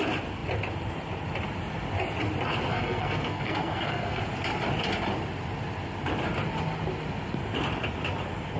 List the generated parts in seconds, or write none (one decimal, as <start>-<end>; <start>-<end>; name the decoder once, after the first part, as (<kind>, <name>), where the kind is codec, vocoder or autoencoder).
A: 2.7-4.2 (codec, SNAC)